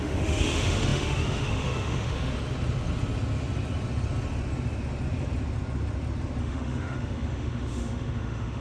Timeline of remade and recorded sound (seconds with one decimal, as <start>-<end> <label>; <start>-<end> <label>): 0.0-2.3 remade; 2.3-6.4 recorded; 6.4-8.6 remade